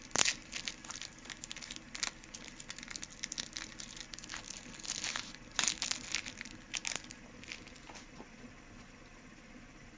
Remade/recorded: recorded